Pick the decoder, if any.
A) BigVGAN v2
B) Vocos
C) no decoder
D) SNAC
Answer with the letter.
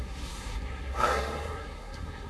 D